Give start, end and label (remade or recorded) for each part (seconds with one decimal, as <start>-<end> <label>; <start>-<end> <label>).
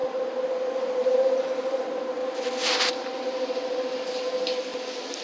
0.0-1.0 recorded; 1.0-1.8 remade; 1.8-2.2 recorded; 2.2-2.9 remade; 2.9-5.2 recorded